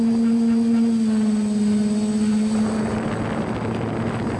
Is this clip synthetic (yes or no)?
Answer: no